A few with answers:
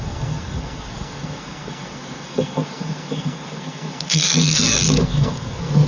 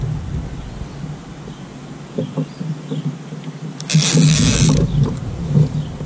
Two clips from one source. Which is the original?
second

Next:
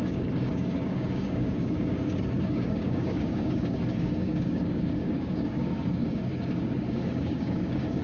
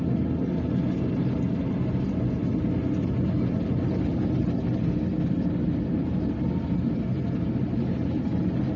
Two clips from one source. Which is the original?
second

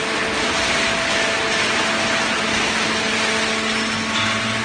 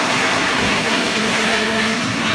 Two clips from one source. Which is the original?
first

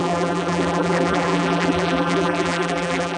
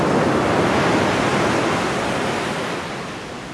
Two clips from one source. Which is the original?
second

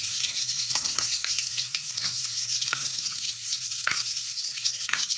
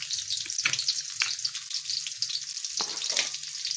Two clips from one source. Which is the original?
second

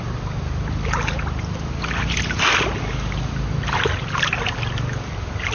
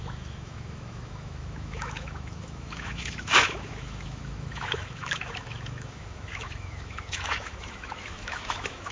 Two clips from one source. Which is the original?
first